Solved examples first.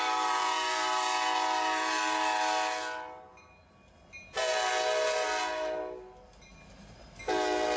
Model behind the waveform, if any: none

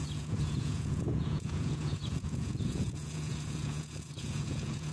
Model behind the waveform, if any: vocoder, Vocos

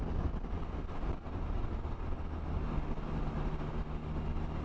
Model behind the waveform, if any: none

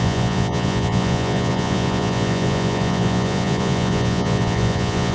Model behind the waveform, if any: vocoder, Vocos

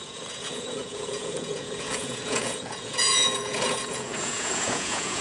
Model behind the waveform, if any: vocoder, Vocos